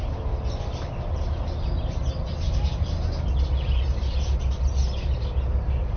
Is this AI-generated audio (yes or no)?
no